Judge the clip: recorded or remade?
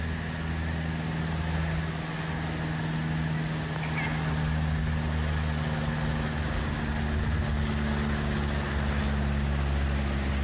recorded